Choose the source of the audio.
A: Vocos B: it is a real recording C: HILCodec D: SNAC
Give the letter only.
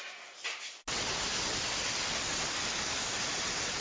B